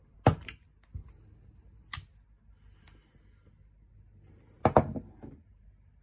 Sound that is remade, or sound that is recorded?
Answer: recorded